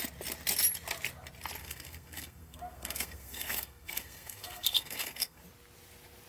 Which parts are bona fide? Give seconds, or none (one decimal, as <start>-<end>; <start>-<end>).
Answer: 0.0-1.6; 5.4-6.3